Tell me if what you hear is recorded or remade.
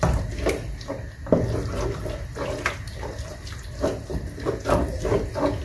recorded